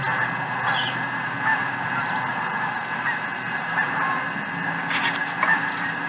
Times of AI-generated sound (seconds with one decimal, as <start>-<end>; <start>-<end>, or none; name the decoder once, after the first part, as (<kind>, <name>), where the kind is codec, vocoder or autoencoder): 1.6-2.5 (vocoder, BigVGAN v2); 5.2-6.1